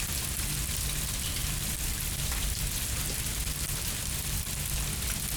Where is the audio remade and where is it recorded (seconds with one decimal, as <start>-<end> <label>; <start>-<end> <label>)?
0.0-1.4 recorded; 1.4-2.9 remade; 2.9-3.4 recorded; 3.4-4.6 remade; 4.6-5.4 recorded